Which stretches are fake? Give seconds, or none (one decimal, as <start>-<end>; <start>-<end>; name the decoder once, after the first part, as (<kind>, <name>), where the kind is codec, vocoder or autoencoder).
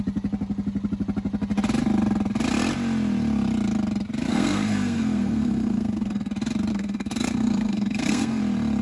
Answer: 4.3-6.3 (codec, SNAC); 6.7-8.4